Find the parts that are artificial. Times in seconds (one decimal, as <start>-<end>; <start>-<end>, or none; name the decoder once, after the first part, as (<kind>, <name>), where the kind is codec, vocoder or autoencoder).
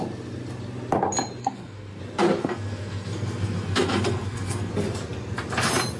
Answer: 1.4-2.0 (codec, SNAC); 2.4-4.7